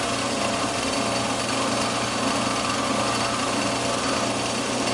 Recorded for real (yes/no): yes